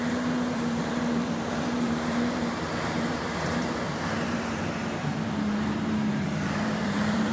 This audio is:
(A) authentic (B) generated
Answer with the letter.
B